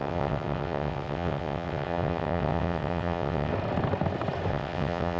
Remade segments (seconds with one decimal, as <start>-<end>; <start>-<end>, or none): 0.0-3.5; 4.5-5.2